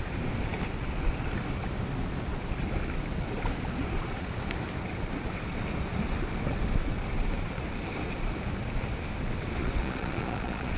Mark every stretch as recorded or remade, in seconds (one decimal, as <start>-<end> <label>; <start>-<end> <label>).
0.0-9.6 recorded; 9.6-10.8 remade